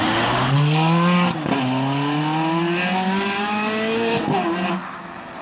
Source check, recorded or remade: recorded